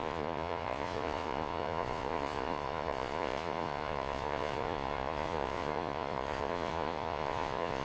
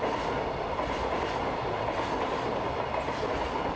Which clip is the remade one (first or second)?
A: first